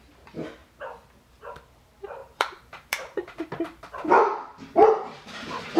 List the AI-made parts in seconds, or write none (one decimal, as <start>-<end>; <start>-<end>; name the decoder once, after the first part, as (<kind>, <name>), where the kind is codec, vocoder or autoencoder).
2.2-5.8 (vocoder, BigVGAN v2)

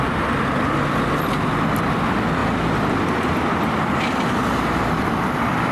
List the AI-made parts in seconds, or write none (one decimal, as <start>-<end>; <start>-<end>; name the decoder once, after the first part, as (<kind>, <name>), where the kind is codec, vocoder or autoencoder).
none

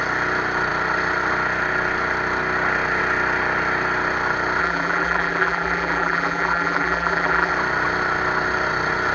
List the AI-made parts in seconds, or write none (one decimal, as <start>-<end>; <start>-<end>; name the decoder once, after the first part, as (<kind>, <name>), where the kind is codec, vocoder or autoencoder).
4.6-7.5 (vocoder, BigVGAN v2)

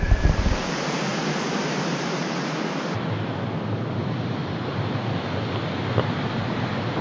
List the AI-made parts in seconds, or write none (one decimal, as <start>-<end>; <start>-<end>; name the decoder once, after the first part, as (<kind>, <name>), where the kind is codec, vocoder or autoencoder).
1.1-2.2 (vocoder, BigVGAN v2)

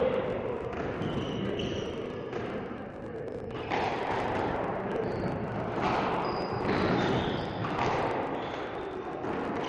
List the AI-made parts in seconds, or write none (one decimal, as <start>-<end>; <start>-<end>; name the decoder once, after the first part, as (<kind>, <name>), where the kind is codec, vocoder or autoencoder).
0.0-7.6 (vocoder, BigVGAN v2)

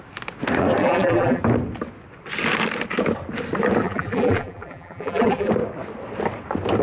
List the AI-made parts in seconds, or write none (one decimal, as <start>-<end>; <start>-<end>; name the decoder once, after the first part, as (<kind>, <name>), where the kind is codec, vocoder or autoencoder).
0.8-1.4 (vocoder, BigVGAN v2); 3.8-5.5

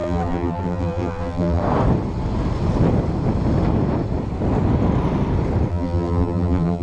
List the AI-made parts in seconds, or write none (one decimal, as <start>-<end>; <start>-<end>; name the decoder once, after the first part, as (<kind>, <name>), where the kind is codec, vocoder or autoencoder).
0.0-1.6 (vocoder, BigVGAN v2); 5.7-6.8